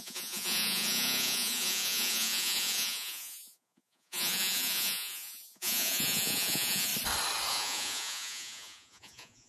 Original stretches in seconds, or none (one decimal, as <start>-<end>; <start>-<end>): 6.9-7.5